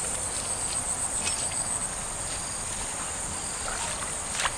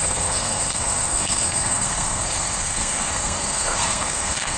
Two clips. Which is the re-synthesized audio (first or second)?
second